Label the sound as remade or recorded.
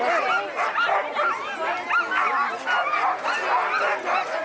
recorded